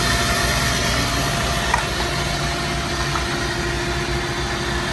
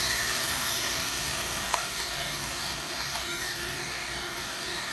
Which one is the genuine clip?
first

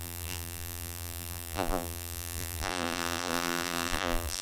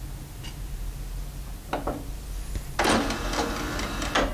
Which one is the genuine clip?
second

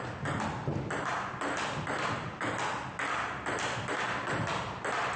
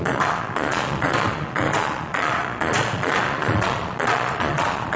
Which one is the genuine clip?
first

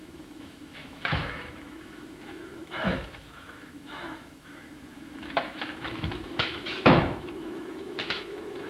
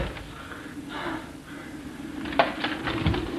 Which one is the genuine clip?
second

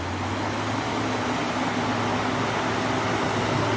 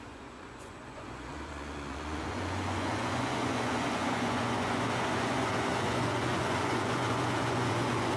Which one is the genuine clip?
first